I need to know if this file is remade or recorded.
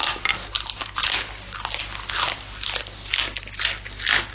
recorded